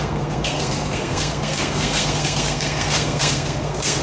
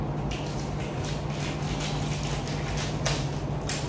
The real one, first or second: second